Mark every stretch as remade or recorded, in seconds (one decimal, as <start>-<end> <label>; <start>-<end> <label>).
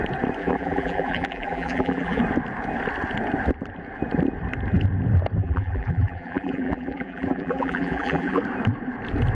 0.0-0.4 recorded; 0.4-2.2 remade; 2.2-5.4 recorded; 5.4-8.4 remade; 8.4-9.3 recorded